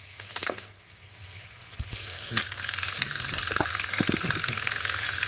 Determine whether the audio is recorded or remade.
remade